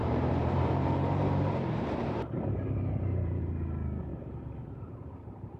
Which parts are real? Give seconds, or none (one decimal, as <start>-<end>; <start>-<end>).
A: 3.4-4.1